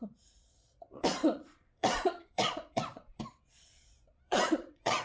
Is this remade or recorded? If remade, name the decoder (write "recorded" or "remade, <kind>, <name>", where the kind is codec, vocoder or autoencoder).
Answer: remade, vocoder, Vocos